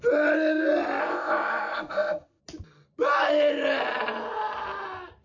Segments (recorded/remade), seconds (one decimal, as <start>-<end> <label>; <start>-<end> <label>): 0.0-1.0 recorded; 1.0-2.4 remade; 2.4-5.2 recorded